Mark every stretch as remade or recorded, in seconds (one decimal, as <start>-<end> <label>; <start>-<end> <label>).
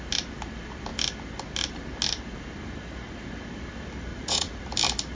0.0-4.1 recorded; 4.1-4.6 remade; 4.6-5.1 recorded